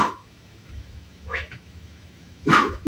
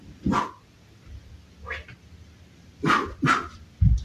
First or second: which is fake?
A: first